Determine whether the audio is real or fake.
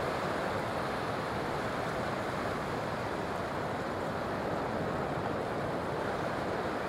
fake